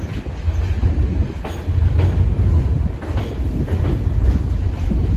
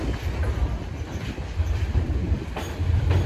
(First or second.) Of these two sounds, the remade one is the second